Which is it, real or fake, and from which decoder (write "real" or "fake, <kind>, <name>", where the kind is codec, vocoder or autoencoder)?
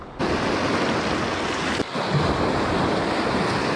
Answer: real